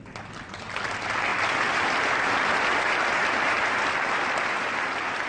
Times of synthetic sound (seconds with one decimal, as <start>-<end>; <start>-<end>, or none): none